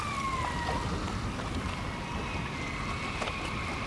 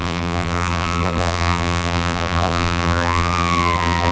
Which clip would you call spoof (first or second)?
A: second